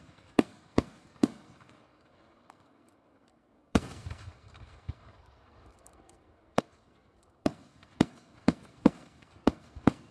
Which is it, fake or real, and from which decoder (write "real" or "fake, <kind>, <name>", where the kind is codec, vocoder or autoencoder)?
fake, codec, SNAC